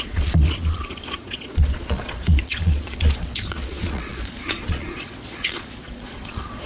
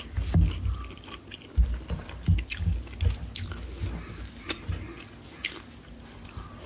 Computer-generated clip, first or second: first